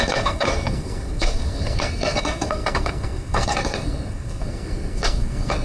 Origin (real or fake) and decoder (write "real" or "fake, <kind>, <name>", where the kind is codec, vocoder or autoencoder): fake, codec, SNAC